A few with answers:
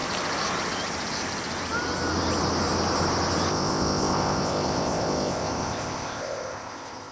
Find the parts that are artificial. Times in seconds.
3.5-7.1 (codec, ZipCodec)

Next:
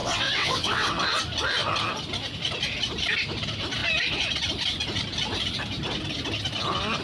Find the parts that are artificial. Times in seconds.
0.0-0.9 (vocoder, WaveNeXt)

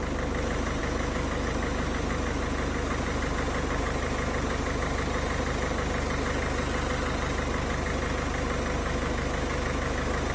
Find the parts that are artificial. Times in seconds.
0.8-1.5 (autoencoder, DAC-VAE); 8.8-10.3

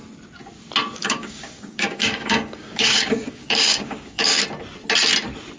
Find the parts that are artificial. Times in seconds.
1.0-4.4 (codec, DAC)